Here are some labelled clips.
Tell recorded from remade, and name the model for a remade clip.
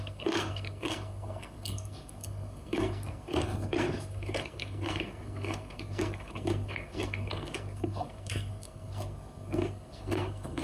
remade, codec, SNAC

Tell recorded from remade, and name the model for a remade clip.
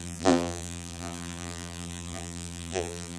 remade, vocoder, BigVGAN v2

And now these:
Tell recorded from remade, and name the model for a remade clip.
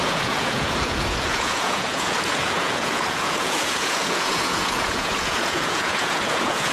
remade, vocoder, Vocos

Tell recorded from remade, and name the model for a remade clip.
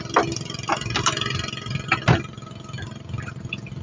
recorded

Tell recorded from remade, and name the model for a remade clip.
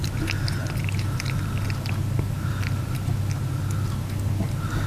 recorded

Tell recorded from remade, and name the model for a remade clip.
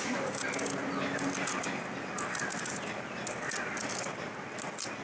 recorded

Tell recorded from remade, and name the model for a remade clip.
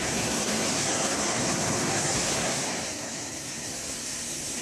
remade, codec, SNAC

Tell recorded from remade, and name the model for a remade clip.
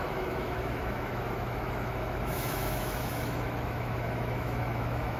remade, autoencoder, DAC-VAE